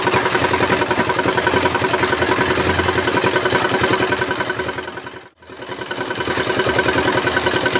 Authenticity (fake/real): real